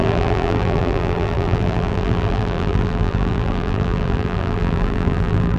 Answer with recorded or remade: remade